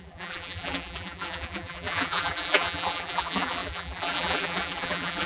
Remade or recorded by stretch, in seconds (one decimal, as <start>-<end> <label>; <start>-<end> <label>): 0.0-5.3 remade

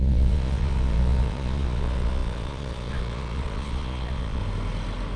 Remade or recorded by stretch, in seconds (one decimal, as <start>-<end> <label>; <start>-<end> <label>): 0.0-4.4 remade; 4.4-5.2 recorded